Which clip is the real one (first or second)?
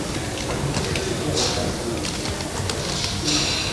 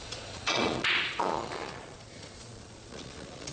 first